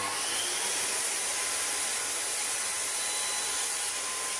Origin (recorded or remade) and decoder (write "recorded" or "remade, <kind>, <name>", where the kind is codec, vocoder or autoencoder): recorded